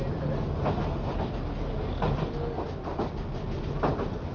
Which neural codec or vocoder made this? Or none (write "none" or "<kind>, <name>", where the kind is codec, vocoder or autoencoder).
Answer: none